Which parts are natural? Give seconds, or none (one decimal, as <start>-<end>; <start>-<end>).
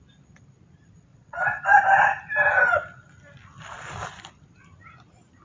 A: 0.0-1.1; 1.6-5.4